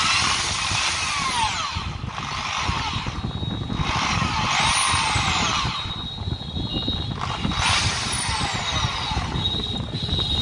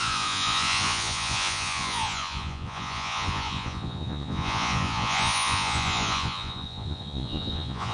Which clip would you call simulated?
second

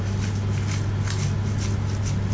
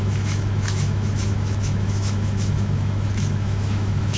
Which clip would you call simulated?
second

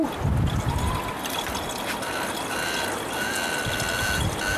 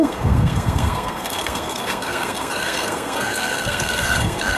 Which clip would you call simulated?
second